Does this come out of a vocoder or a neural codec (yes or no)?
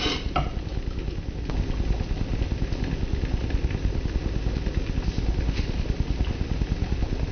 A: no